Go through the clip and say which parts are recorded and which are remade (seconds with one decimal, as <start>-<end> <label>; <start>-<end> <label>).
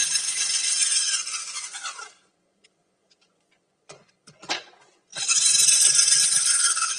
0.0-5.1 remade; 5.1-6.2 recorded; 6.2-7.0 remade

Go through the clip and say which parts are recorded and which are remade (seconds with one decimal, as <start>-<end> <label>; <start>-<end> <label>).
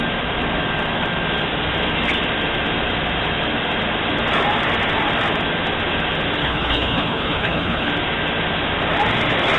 0.0-6.4 recorded; 6.4-7.9 remade; 7.9-9.6 recorded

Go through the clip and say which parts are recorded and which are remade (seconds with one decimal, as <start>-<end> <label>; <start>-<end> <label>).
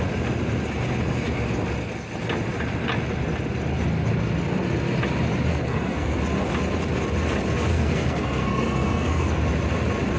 0.0-5.5 recorded; 5.5-6.2 remade; 6.2-7.7 recorded; 7.7-9.4 remade; 9.4-10.2 recorded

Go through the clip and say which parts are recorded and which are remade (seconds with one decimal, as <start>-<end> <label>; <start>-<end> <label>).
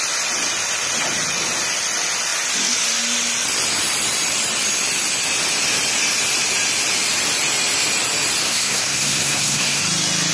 0.0-8.4 recorded; 8.4-9.8 remade; 9.8-10.3 recorded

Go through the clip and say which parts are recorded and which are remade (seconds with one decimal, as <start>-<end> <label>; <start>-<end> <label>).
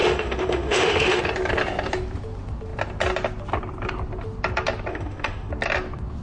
0.0-1.2 remade; 1.2-4.9 recorded; 4.9-5.5 remade; 5.5-6.2 recorded